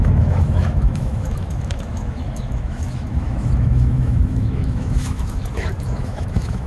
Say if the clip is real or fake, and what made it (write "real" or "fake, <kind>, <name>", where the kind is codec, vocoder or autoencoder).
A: fake, autoencoder, DAC-VAE